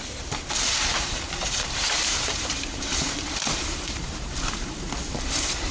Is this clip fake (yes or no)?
yes